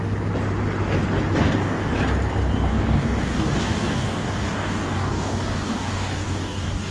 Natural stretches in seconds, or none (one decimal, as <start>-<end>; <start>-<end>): 0.0-1.4; 1.9-2.7